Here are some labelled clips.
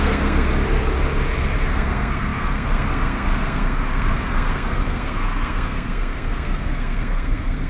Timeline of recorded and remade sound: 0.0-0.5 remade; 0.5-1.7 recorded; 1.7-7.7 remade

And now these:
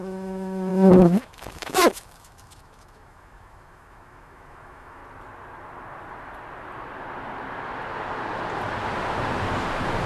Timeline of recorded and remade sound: 0.0-5.0 remade; 5.0-10.1 recorded

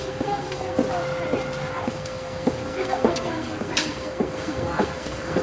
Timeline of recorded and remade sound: 0.0-0.8 remade; 0.8-1.7 recorded; 1.7-5.4 remade

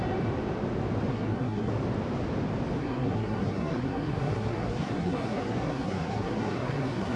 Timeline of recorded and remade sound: 0.0-1.1 recorded; 1.1-1.7 remade; 1.7-2.8 recorded; 2.8-7.2 remade

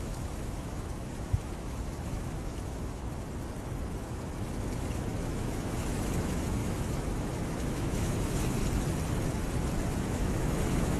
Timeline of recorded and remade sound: 0.0-3.0 remade; 3.0-4.0 recorded; 4.0-8.6 remade; 8.6-9.9 recorded; 9.9-11.0 remade